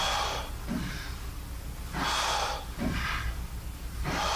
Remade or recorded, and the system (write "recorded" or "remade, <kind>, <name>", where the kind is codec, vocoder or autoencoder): recorded